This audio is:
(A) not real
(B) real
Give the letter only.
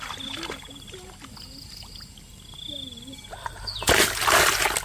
B